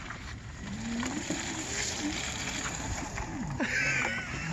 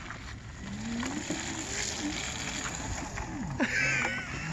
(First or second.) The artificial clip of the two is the first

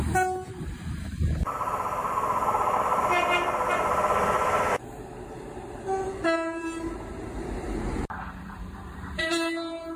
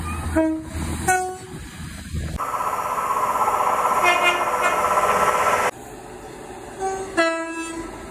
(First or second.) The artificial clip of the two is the first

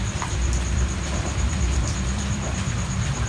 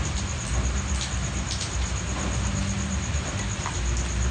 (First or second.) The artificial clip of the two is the first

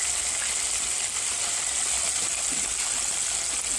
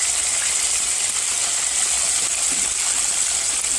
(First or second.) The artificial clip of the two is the second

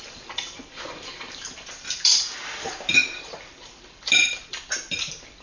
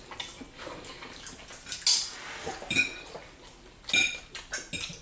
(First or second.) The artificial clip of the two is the first